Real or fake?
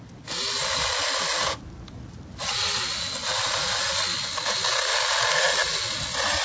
real